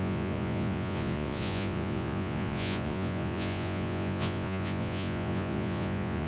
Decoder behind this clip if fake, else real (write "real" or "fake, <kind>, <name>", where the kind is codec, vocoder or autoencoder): fake, vocoder, Vocos